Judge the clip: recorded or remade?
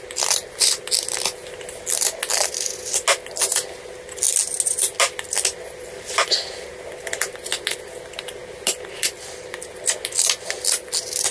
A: recorded